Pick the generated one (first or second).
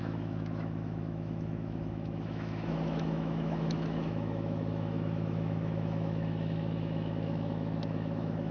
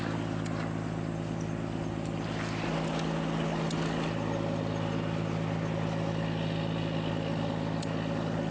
first